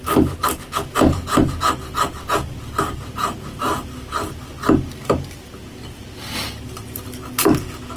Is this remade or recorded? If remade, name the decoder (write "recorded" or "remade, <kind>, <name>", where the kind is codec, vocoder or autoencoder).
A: recorded